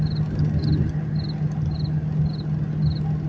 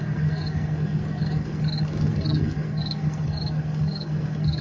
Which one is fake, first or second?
second